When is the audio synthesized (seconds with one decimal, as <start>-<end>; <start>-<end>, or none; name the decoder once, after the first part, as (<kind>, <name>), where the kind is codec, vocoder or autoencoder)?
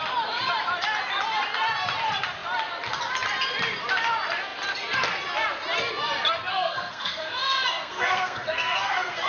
6.5-9.3 (codec, SNAC)